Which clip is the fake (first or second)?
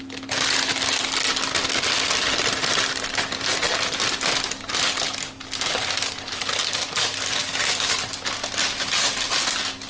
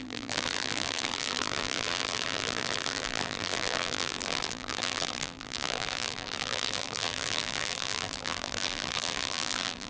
second